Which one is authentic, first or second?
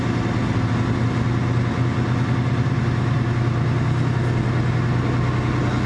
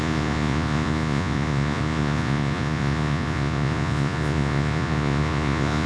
first